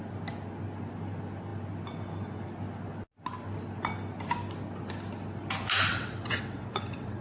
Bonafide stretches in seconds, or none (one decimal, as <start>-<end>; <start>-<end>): 0.0-5.9